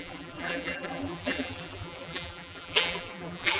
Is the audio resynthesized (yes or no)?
yes